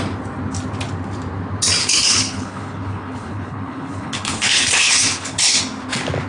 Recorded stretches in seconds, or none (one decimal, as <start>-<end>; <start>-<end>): 0.0-1.8; 5.6-6.3